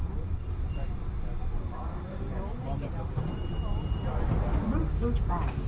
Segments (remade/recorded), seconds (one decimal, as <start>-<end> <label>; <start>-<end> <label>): 0.0-1.4 recorded; 1.4-4.8 remade; 4.8-5.7 recorded